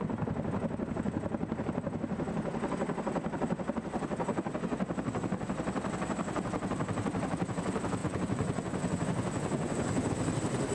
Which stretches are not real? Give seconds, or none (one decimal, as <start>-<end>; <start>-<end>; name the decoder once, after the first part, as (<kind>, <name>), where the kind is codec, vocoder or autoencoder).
8.0-10.1 (vocoder, Vocos)